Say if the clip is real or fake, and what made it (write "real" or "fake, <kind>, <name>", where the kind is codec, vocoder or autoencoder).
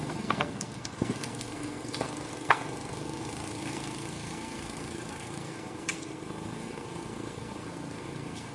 fake, codec, SNAC